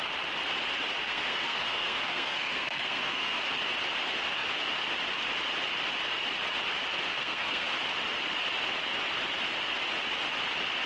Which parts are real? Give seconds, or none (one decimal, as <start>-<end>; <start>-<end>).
0.0-1.0; 3.4-7.1; 7.8-10.9